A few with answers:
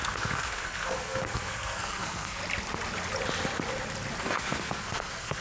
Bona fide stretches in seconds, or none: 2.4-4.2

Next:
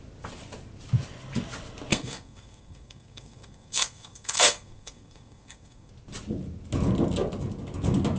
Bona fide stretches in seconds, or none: 0.0-1.9; 5.9-8.2

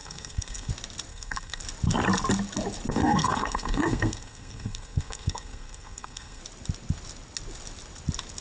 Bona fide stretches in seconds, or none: 0.7-1.1; 1.6-2.9; 6.4-8.4

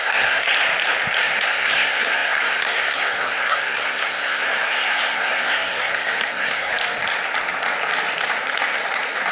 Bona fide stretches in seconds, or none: 0.5-1.2; 6.7-9.3

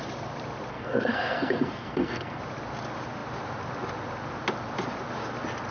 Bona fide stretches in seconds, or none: 0.0-0.7; 2.4-5.7